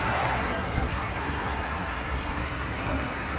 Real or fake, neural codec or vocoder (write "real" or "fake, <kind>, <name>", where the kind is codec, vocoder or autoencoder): fake, codec, SNAC